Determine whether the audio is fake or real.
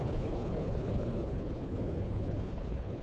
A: fake